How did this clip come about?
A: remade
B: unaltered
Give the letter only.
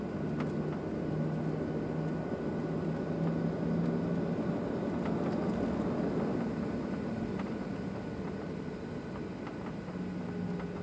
B